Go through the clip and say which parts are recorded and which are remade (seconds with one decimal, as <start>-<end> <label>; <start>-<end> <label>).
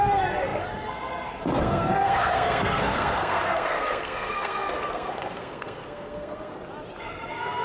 0.0-6.5 remade; 6.5-7.0 recorded; 7.0-7.6 remade